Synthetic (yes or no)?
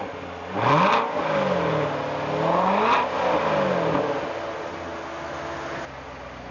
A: no